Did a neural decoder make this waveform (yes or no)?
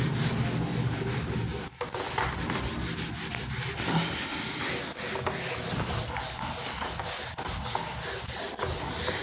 no